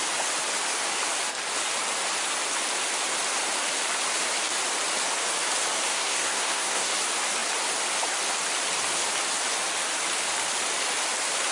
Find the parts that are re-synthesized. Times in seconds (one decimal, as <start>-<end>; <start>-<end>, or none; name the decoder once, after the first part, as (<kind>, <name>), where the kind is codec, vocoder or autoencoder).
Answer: 5.9-6.9 (codec, SNAC)